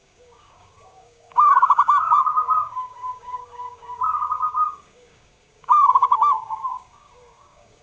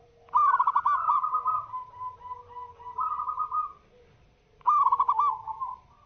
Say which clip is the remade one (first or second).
first